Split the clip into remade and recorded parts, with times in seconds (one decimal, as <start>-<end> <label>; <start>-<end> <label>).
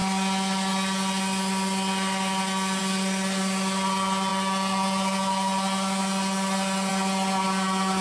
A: 0.0-8.0 recorded